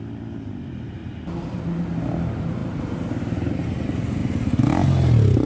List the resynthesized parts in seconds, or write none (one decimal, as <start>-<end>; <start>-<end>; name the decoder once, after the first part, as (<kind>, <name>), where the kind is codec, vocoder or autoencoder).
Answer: none